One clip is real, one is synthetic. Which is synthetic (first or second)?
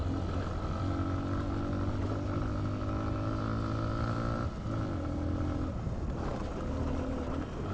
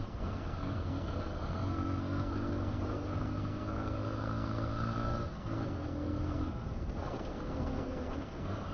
second